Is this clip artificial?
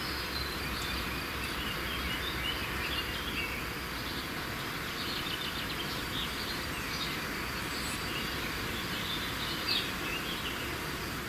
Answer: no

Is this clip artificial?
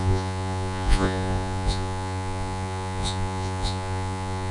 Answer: yes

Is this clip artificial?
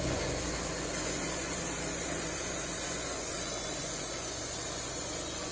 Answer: yes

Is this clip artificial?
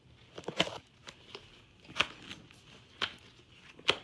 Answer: no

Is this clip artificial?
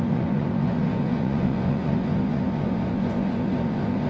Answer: yes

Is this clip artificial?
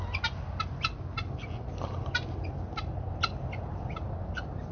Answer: no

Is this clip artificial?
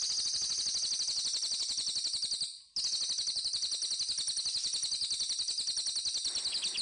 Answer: no